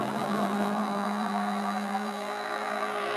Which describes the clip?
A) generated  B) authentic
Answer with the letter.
A